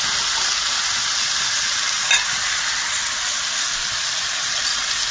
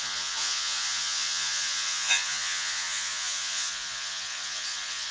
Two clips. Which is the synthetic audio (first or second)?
second